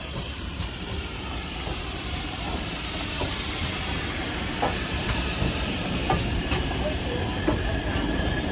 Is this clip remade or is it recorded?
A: remade